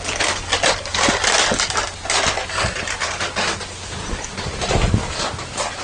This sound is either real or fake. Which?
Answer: real